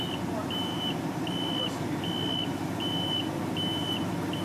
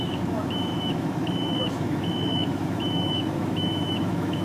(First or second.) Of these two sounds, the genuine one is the first